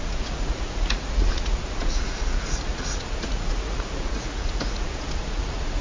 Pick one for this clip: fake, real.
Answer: fake